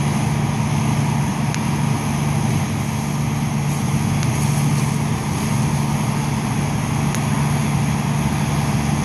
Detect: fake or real real